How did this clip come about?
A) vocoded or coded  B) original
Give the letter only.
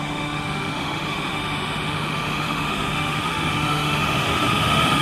A